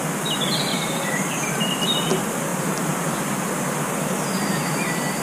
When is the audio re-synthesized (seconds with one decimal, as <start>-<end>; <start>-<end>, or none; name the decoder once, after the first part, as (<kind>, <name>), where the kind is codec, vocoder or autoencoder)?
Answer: 0.7-1.5 (vocoder, BigVGAN v2); 2.5-3.2